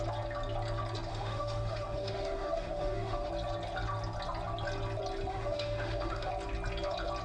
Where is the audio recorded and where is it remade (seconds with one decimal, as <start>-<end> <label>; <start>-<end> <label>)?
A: 0.0-1.1 recorded; 1.1-3.3 remade; 3.3-5.3 recorded; 5.3-6.3 remade; 6.3-7.2 recorded